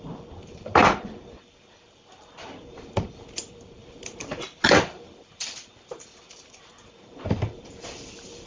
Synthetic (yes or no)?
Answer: no